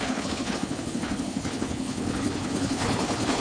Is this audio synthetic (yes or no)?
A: yes